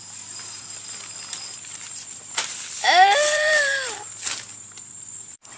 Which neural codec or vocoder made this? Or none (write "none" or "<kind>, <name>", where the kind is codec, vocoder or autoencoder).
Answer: vocoder, BigVGAN v2